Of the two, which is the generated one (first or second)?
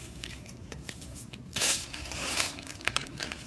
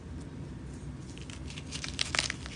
first